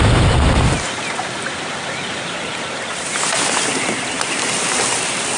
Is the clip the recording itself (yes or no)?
yes